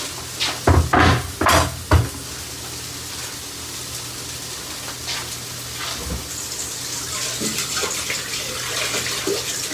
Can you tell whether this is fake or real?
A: real